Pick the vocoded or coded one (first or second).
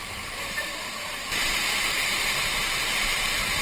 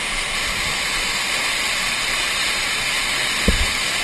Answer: first